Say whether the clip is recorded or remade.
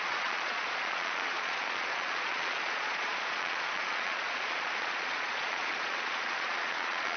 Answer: remade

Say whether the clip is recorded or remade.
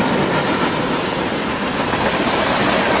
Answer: recorded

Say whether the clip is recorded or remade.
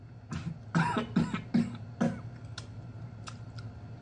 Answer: recorded